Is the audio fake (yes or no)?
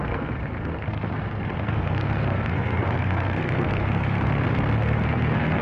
yes